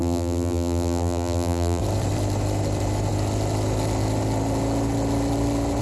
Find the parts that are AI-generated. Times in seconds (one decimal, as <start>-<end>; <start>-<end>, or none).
0.0-1.8